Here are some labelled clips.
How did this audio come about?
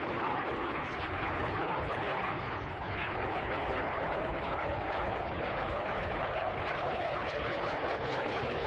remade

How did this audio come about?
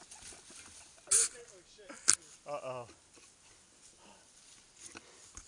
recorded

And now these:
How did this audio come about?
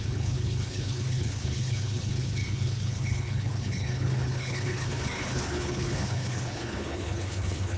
remade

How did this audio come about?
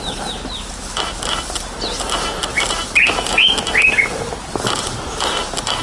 recorded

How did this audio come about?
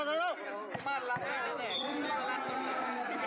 recorded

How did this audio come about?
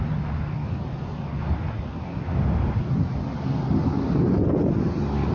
recorded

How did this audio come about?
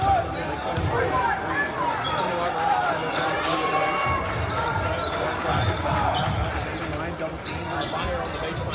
recorded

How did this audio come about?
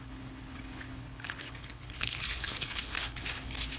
remade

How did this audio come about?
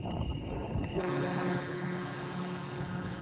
remade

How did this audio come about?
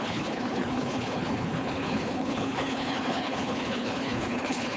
remade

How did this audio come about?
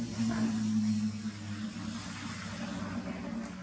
recorded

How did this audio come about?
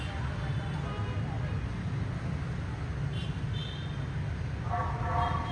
recorded